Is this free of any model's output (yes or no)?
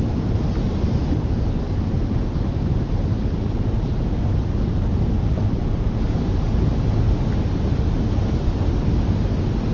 yes